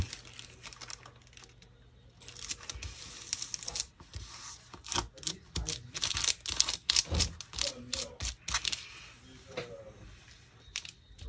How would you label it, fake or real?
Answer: real